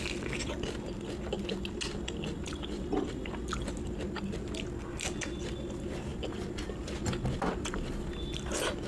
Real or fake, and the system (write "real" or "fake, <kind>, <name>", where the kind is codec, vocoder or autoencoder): real